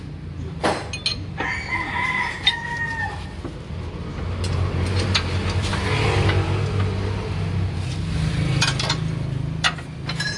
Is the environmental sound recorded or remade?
recorded